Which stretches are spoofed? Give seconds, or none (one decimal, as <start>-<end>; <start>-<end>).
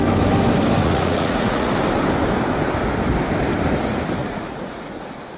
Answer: 0.8-1.7; 4.2-5.0